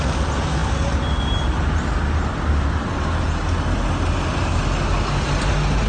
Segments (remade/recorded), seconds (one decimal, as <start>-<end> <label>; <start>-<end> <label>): 0.0-5.9 recorded